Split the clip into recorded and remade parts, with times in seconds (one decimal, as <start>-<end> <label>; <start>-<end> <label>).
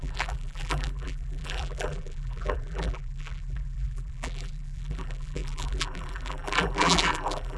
0.0-7.6 remade